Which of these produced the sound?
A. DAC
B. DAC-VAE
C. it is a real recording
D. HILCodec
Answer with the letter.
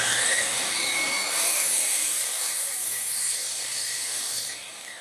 A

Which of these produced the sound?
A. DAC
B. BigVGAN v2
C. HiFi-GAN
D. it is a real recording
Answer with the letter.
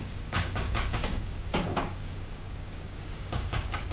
A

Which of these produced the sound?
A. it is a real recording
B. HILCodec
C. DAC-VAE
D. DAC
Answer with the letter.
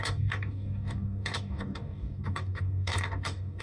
D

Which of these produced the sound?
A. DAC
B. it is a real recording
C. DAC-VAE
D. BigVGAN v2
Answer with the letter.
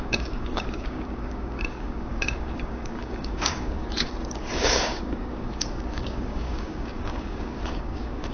A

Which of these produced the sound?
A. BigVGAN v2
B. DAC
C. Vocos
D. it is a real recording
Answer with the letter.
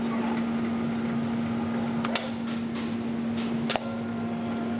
D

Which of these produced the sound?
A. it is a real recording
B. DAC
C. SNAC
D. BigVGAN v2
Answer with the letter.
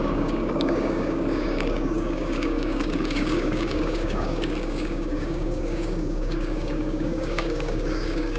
B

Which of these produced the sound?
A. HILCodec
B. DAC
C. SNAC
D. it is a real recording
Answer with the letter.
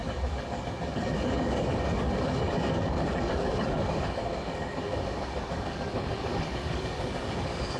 B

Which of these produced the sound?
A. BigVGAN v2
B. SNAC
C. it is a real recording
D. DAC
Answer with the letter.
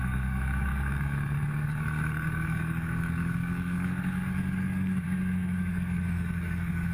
D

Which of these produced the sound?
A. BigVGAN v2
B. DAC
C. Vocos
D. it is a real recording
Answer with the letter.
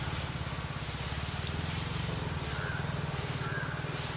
D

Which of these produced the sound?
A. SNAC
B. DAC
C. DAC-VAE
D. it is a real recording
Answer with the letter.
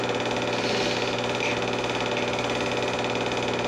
D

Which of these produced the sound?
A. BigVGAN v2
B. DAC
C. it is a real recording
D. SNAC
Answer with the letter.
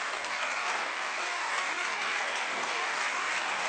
B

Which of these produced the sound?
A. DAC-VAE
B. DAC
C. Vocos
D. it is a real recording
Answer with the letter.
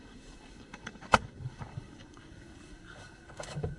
B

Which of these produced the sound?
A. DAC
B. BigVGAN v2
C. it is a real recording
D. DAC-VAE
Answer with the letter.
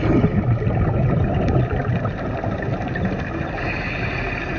C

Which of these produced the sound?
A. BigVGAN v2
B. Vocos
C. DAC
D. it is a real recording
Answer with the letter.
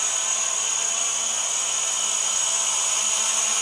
D